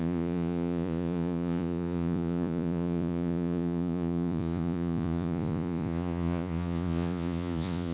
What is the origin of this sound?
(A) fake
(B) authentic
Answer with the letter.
A